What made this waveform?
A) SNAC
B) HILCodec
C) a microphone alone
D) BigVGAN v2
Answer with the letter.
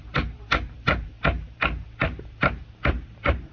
D